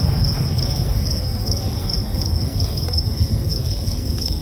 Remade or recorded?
remade